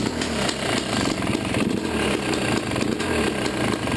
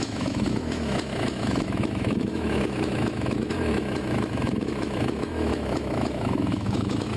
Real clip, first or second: first